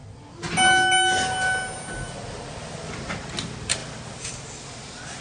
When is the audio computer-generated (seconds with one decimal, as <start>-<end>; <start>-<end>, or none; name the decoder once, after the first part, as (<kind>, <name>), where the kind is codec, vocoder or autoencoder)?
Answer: none